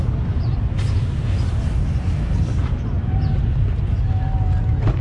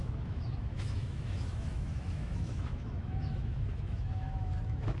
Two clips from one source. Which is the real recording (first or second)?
first